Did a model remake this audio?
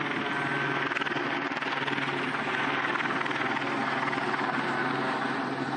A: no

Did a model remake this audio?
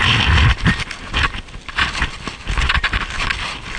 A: no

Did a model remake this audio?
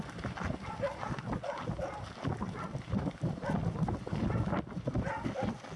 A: no